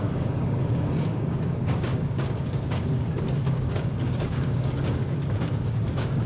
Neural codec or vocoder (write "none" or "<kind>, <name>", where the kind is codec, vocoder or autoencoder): codec, DAC